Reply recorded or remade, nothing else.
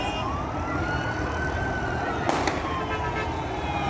recorded